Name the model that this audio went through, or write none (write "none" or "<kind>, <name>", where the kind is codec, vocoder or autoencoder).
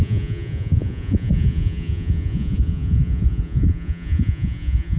vocoder, Vocos